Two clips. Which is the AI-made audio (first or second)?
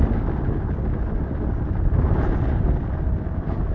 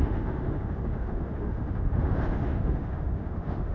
second